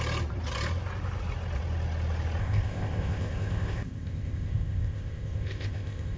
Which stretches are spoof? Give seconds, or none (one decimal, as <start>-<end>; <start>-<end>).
2.4-6.2